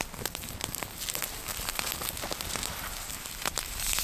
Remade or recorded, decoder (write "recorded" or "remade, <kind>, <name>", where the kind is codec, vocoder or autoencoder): remade, vocoder, BigVGAN v2